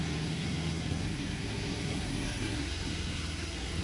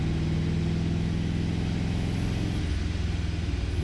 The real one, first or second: second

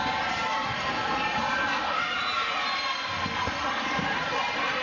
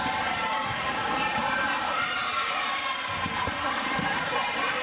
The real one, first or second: first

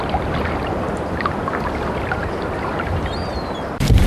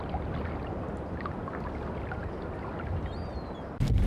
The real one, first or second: second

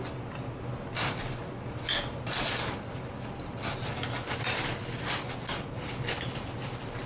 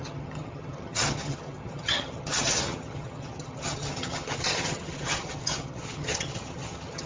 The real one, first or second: first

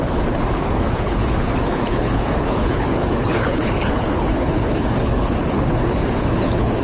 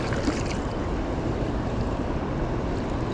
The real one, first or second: second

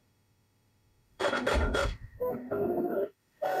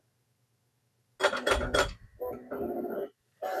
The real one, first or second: second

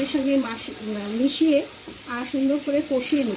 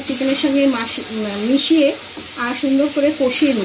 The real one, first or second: second